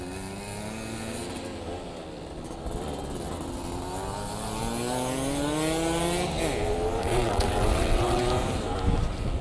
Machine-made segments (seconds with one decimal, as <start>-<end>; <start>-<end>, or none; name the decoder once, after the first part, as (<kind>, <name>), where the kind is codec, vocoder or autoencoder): 7.0-8.2 (vocoder, WaveNeXt)